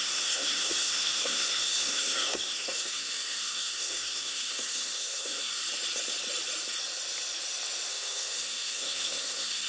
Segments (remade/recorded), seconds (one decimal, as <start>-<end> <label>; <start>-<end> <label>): 0.0-5.6 remade; 5.6-7.9 recorded; 7.9-9.7 remade